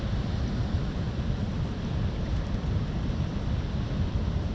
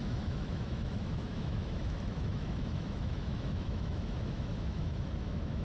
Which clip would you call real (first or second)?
first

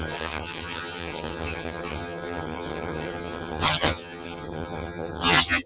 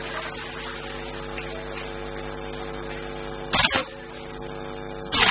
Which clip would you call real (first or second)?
second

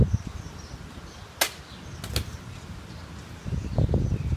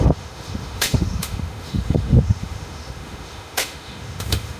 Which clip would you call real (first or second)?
first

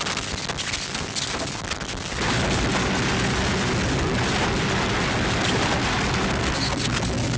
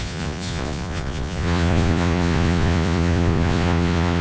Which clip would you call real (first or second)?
first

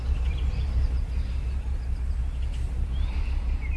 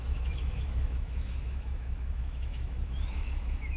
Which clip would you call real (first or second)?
first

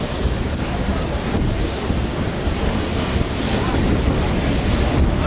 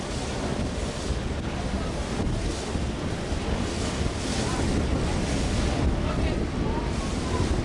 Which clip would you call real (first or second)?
second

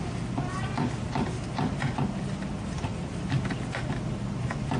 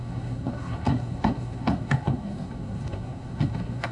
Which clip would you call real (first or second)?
first